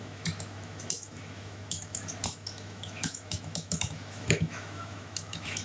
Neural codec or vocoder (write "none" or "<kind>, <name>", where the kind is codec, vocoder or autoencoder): autoencoder, DAC-VAE